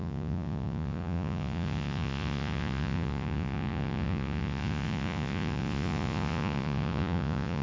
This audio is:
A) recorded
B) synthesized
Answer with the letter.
B